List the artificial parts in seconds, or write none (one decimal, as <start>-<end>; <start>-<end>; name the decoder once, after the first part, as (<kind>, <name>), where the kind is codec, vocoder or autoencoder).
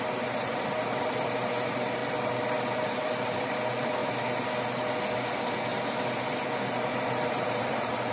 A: 0.0-2.0 (vocoder, BigVGAN v2); 3.4-4.0; 6.2-8.1